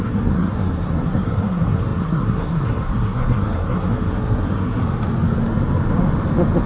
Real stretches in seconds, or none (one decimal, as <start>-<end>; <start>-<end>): 4.8-6.7